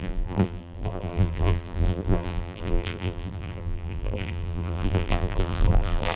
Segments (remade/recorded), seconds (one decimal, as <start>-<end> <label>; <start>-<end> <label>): 0.0-6.2 remade